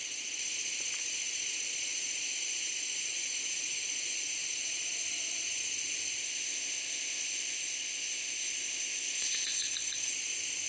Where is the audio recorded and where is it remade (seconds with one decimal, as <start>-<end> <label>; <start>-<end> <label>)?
0.0-6.2 recorded; 6.2-10.1 remade; 10.1-10.7 recorded

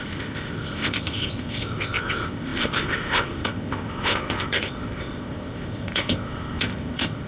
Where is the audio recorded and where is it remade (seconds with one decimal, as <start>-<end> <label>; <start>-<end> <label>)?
0.0-7.3 remade